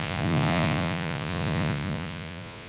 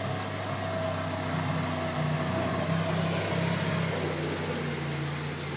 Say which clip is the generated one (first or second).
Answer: first